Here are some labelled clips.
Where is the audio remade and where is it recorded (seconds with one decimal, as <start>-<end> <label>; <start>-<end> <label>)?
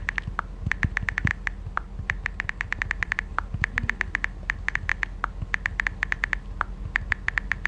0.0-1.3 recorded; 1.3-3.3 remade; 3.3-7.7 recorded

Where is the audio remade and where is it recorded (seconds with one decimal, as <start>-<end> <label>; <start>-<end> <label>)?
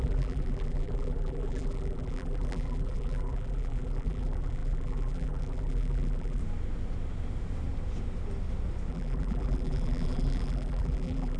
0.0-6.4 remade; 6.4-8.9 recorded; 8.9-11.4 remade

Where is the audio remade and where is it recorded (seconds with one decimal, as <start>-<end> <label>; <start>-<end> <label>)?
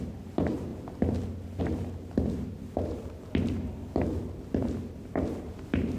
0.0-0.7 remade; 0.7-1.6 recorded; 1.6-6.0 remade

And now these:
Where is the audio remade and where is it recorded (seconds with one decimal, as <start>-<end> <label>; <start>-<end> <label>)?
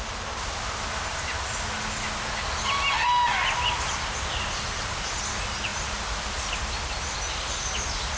0.0-8.2 recorded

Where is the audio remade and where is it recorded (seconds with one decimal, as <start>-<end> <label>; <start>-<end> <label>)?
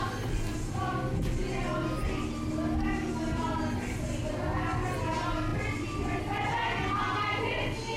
0.0-8.0 recorded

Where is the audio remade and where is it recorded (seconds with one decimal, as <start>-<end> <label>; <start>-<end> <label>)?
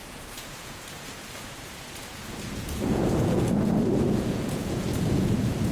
0.0-5.7 remade